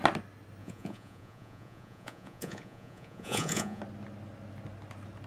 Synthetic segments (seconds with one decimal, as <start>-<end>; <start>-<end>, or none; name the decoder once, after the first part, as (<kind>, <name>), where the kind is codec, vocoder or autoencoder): 0.6-3.8 (vocoder, Vocos)